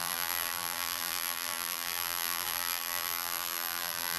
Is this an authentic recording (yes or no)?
no